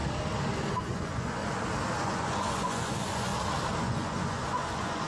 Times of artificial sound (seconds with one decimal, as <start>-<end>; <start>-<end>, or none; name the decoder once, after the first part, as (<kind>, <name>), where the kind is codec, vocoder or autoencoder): 0.8-1.4 (vocoder, Vocos); 2.0-3.3; 3.8-5.1